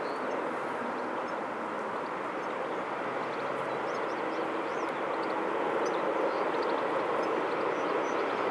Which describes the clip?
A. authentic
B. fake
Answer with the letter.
A